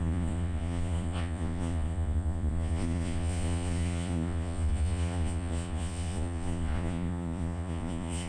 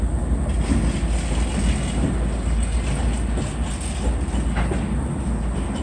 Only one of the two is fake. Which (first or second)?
first